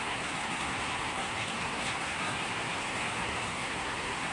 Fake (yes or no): yes